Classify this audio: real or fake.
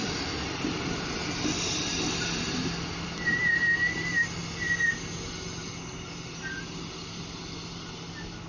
real